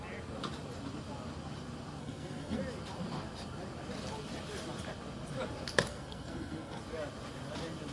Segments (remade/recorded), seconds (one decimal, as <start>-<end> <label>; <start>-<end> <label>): 0.0-2.0 recorded; 2.0-2.6 remade; 2.6-5.9 recorded; 5.9-6.8 remade; 6.8-7.9 recorded